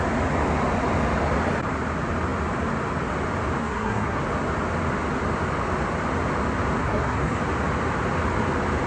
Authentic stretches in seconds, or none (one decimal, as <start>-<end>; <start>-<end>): 0.0-3.6; 4.2-6.8; 7.4-8.9